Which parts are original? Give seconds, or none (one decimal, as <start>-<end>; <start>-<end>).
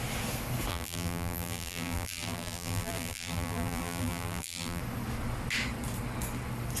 0.0-0.7; 4.8-6.8